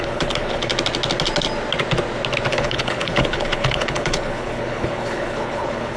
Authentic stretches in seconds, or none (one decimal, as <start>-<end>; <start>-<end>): 0.7-2.5